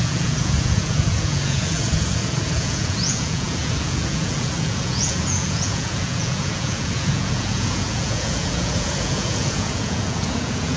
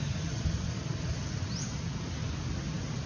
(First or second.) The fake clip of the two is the first